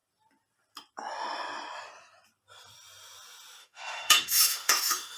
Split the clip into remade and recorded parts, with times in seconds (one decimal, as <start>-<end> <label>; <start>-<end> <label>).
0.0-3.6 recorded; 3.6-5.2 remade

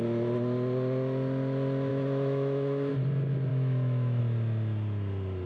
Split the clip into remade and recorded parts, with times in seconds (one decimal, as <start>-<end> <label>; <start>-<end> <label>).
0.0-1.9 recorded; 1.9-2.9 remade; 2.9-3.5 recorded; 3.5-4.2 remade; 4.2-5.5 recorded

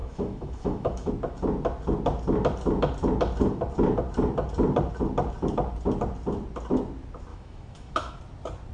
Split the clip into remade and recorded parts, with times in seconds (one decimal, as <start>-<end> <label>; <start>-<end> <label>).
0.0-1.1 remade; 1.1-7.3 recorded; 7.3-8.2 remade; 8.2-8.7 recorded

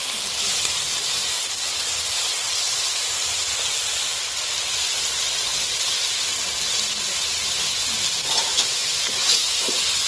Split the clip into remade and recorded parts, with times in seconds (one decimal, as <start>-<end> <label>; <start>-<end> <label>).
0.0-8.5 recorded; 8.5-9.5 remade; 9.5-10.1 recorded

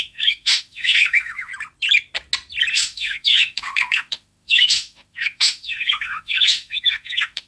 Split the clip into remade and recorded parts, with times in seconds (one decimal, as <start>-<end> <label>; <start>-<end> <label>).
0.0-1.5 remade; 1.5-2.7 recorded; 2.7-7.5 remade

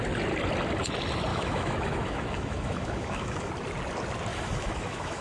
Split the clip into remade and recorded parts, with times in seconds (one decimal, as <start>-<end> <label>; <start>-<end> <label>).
0.0-1.3 recorded; 1.3-3.5 remade; 3.5-4.3 recorded; 4.3-5.2 remade